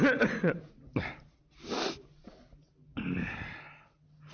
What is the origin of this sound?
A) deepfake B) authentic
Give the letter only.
B